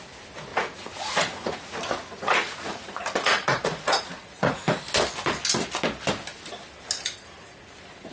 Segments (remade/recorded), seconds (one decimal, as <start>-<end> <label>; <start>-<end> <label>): 0.0-0.5 recorded; 0.5-4.6 remade; 4.6-8.1 recorded